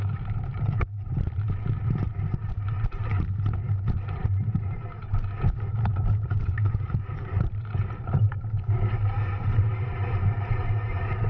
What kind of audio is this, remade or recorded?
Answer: remade